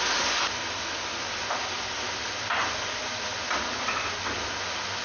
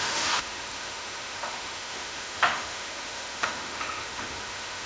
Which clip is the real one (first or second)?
first